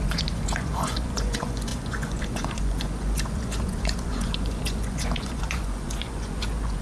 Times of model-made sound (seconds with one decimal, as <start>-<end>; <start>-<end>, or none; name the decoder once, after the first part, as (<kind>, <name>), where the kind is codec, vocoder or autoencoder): 0.0-6.8 (vocoder, Vocos)

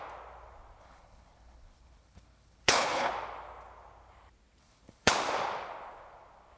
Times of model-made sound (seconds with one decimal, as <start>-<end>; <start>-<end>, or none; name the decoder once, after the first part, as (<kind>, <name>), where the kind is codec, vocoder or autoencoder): 0.8-3.1 (codec, HILCodec); 4.6-5.1

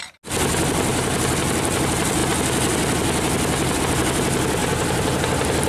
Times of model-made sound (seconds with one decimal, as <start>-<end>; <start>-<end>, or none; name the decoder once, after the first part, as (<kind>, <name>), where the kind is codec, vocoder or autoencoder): 0.9-1.8 (vocoder, BigVGAN v2); 4.6-5.2

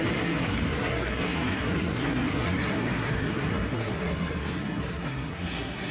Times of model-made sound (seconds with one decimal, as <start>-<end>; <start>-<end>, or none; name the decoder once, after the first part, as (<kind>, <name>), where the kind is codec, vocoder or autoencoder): 0.0-5.9 (codec, SNAC)